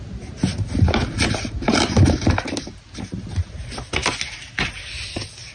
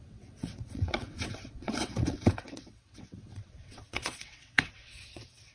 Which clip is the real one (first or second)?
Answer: first